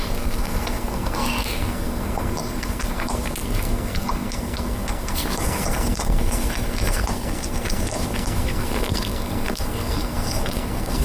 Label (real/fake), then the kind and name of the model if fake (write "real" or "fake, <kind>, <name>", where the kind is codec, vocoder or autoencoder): fake, codec, SNAC